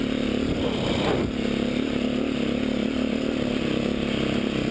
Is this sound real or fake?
real